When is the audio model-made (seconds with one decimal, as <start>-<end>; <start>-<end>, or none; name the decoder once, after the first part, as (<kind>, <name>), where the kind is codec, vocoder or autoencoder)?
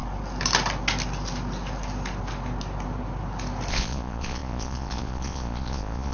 3.7-6.1 (vocoder, Vocos)